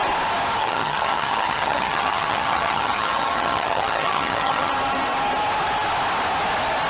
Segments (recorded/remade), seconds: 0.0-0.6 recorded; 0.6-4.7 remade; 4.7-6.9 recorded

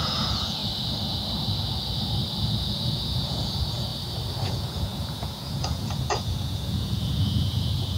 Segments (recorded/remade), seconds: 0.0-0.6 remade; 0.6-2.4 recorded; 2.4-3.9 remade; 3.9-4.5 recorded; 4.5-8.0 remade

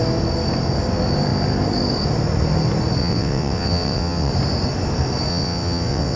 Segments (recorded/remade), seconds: 0.0-3.0 recorded; 3.0-4.3 remade; 4.3-5.3 recorded; 5.3-6.2 remade

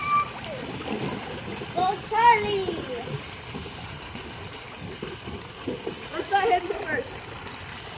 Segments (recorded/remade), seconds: 0.0-2.6 recorded; 2.6-4.0 remade; 4.0-8.0 recorded